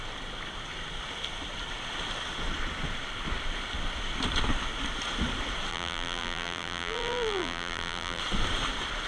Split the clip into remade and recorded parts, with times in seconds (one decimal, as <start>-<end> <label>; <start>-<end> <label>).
0.0-5.7 recorded; 5.7-8.2 remade; 8.2-9.1 recorded

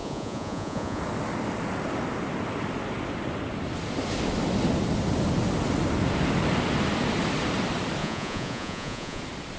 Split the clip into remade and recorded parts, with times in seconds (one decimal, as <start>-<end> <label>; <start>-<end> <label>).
0.0-1.0 remade; 1.0-8.0 recorded; 8.0-9.2 remade; 9.2-9.6 recorded

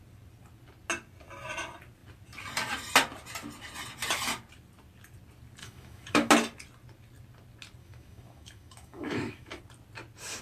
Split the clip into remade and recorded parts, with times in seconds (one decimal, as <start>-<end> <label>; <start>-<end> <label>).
0.0-5.6 recorded; 5.6-6.3 remade; 6.3-7.8 recorded; 7.8-9.6 remade; 9.6-10.4 recorded

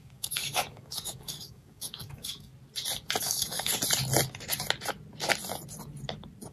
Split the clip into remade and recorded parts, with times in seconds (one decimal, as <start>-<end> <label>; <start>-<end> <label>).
0.0-2.5 remade; 2.5-3.2 recorded; 3.2-3.7 remade; 3.7-6.5 recorded

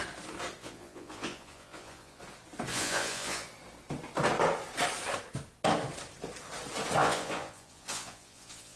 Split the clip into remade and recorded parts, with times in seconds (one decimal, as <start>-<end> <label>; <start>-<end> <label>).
0.0-0.6 recorded; 0.6-2.2 remade; 2.2-2.7 recorded; 2.7-3.5 remade; 3.5-7.0 recorded; 7.0-8.8 remade

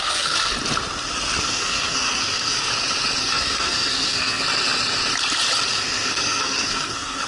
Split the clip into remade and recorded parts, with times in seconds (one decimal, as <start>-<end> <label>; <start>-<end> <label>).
0.0-0.5 remade; 0.5-1.4 recorded; 1.4-2.7 remade; 2.7-3.2 recorded; 3.2-4.4 remade; 4.4-5.7 recorded; 5.7-7.3 remade

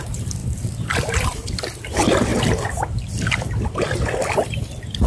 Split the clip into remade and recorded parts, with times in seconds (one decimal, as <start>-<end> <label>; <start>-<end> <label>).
0.0-5.1 remade